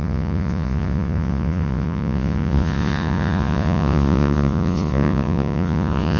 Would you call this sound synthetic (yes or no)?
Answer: yes